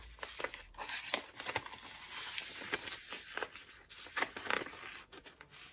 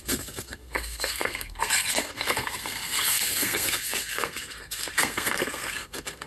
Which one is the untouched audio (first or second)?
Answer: first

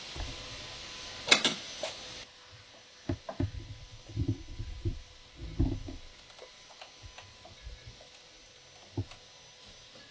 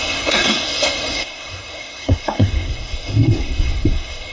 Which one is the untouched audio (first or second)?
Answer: first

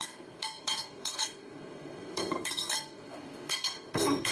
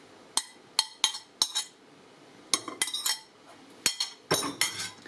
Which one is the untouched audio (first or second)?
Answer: second